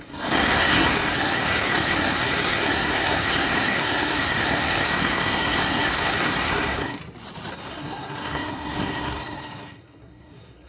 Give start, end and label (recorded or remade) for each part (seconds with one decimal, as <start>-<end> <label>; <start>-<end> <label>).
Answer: 0.0-7.0 remade; 7.0-7.5 recorded; 7.5-10.7 remade